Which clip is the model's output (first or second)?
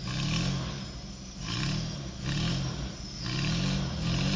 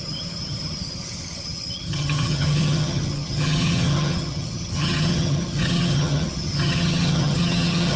second